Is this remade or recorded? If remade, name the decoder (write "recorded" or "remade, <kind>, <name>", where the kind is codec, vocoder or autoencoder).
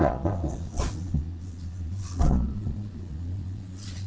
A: remade, vocoder, Vocos